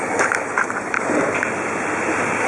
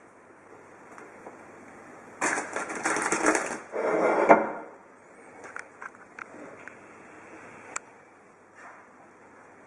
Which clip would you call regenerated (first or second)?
first